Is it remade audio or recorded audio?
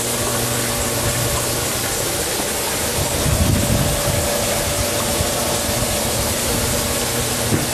recorded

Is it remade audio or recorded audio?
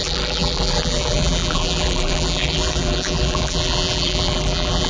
remade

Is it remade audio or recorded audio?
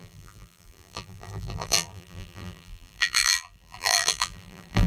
remade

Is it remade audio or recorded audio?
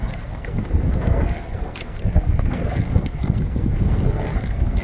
remade